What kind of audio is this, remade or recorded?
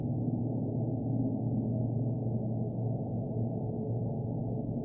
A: recorded